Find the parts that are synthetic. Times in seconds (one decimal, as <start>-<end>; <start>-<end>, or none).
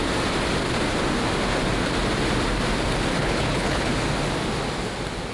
3.2-3.9